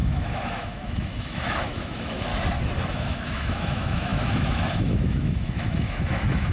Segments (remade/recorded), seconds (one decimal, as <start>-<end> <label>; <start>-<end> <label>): 0.0-2.3 remade; 2.3-2.9 recorded; 2.9-6.5 remade